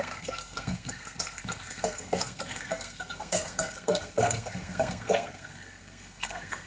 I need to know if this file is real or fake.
fake